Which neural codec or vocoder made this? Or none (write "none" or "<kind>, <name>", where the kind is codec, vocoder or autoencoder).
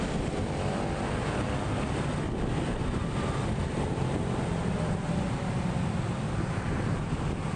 none